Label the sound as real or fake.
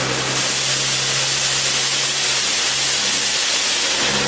real